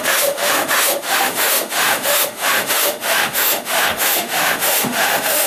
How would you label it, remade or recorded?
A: remade